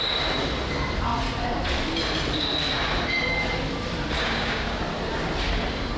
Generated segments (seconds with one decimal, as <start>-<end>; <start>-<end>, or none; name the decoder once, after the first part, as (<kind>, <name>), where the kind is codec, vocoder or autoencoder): 4.2-4.8 (codec, DAC)

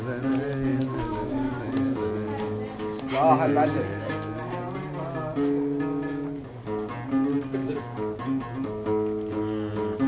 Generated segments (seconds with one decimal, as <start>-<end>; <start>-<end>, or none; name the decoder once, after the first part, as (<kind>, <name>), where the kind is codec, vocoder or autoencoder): 0.7-1.6 (codec, DAC)

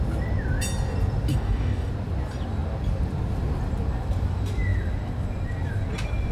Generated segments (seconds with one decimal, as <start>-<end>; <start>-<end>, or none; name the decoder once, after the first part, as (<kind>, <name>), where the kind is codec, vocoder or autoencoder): 1.3-1.9 (codec, DAC)